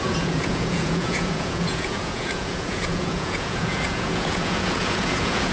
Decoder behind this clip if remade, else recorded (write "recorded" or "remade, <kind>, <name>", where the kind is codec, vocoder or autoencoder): remade, vocoder, Vocos